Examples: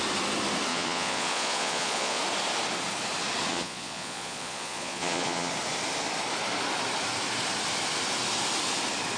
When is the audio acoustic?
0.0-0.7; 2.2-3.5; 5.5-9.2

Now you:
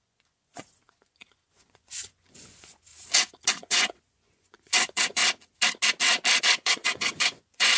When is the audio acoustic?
2.9-3.5; 5.2-6.4

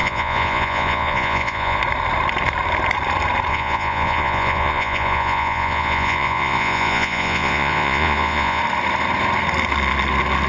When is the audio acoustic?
1.8-3.5; 8.6-10.5